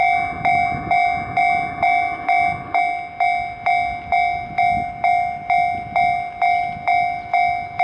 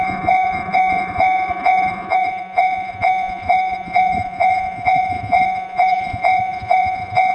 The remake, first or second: second